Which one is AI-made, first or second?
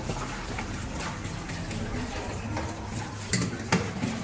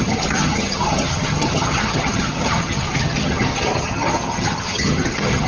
second